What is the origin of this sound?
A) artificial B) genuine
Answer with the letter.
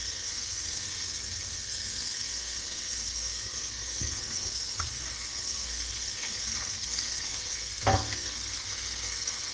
A